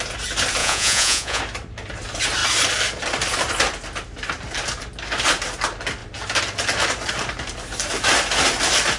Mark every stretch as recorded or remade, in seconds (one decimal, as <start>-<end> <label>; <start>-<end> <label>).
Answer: 0.0-0.6 recorded; 0.6-1.4 remade; 1.4-9.0 recorded